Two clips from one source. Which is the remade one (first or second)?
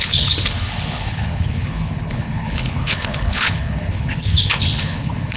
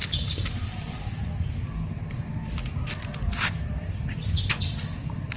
first